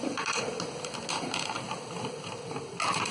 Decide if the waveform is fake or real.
real